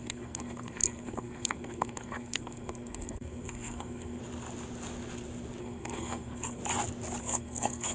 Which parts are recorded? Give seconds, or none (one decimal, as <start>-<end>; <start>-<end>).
4.2-5.6; 6.6-7.2